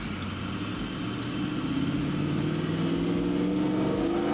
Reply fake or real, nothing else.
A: real